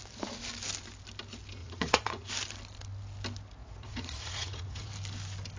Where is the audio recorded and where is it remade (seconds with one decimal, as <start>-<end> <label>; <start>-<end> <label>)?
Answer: 0.0-1.6 recorded; 1.6-2.3 remade; 2.3-3.6 recorded; 3.6-4.9 remade; 4.9-5.6 recorded